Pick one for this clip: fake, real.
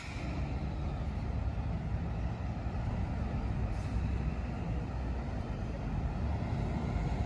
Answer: real